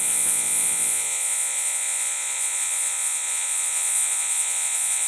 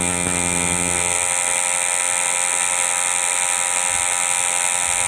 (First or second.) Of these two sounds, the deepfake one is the first